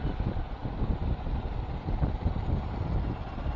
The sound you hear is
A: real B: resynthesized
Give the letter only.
A